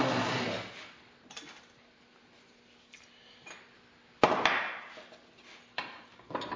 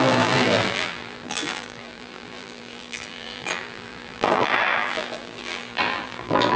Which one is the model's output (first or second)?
second